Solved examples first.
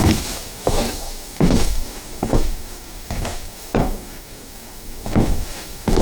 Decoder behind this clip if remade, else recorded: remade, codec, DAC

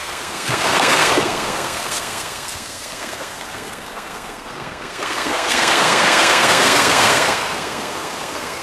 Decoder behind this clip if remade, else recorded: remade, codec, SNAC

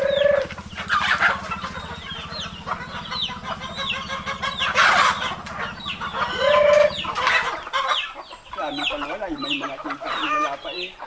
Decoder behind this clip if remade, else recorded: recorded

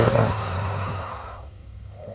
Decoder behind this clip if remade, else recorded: remade, codec, SNAC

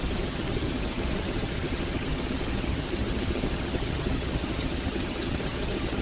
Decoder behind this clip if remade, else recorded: remade, vocoder, HiFi-GAN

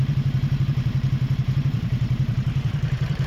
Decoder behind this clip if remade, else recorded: remade, vocoder, BigVGAN v2